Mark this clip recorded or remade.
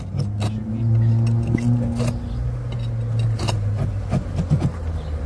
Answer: recorded